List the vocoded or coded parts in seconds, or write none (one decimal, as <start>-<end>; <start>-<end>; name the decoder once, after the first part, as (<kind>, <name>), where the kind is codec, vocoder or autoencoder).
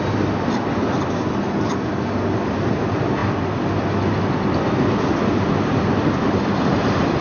none